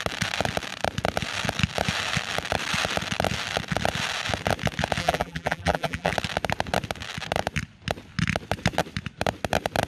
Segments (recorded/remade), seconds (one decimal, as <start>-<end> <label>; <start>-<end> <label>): 0.0-5.0 recorded; 5.0-6.1 remade; 6.1-9.9 recorded